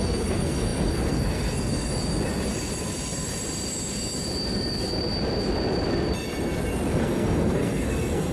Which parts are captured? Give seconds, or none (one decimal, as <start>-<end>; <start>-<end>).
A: 1.9-6.9